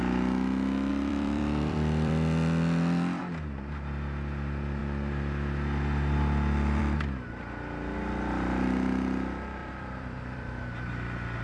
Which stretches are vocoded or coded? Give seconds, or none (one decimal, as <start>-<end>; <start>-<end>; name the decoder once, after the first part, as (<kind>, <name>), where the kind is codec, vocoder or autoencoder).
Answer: 0.9-3.2 (vocoder, BigVGAN v2); 9.6-10.6